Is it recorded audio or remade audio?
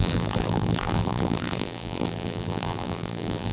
remade